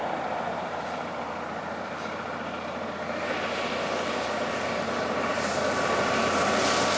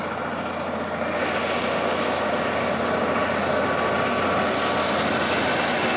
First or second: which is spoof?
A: first